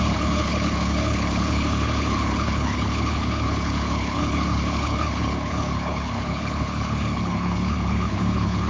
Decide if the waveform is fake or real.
fake